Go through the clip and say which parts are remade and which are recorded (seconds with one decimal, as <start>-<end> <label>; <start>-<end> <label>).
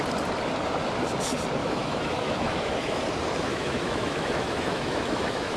0.0-1.6 recorded; 1.6-3.0 remade; 3.0-3.5 recorded; 3.5-5.6 remade